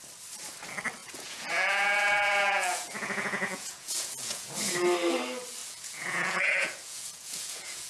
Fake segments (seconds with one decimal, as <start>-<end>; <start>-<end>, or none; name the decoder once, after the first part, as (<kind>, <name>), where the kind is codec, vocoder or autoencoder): 1.0-4.5 (vocoder, Vocos); 5.6-7.9